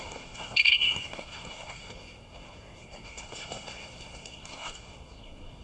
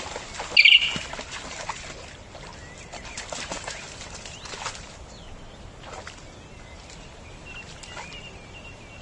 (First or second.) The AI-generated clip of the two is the first